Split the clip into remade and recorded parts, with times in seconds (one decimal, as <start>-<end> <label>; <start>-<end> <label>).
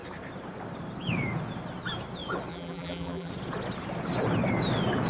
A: 0.0-2.5 recorded; 2.5-3.3 remade; 3.3-5.1 recorded